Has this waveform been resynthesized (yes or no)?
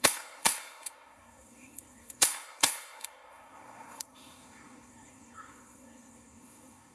yes